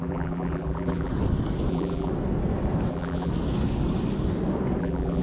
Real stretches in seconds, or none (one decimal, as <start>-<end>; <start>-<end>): 1.1-1.7; 2.1-2.9; 3.3-4.8